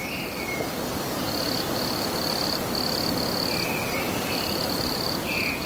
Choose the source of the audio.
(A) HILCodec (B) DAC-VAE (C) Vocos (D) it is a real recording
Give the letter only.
D